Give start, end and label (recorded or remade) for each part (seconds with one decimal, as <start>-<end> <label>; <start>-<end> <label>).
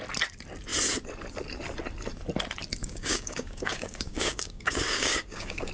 0.0-2.8 recorded; 2.8-5.7 remade